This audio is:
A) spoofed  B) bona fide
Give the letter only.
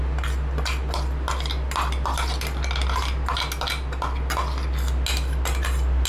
B